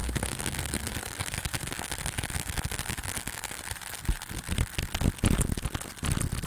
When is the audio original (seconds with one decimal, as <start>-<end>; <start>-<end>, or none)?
3.6-6.5